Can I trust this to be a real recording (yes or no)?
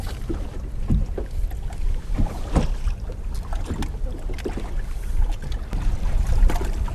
yes